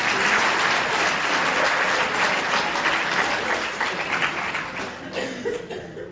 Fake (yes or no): no